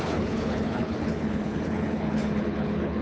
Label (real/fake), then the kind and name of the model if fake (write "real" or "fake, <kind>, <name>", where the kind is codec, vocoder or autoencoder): fake, codec, HILCodec